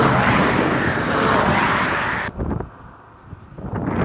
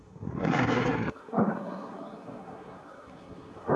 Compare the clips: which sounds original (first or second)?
first